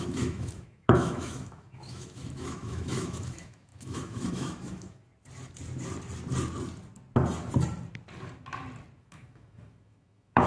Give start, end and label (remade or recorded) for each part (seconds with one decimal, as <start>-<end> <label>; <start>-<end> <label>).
0.0-5.1 remade; 5.1-9.0 recorded; 9.0-10.5 remade